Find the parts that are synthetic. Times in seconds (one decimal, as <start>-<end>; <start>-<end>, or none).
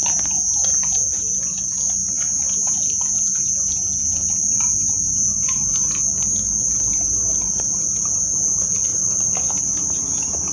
8.9-9.5